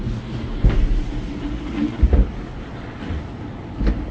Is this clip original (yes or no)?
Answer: yes